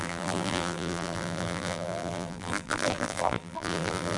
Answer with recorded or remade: remade